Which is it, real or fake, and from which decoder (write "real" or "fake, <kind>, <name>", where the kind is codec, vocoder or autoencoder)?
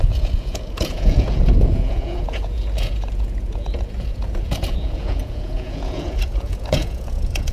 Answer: fake, vocoder, Vocos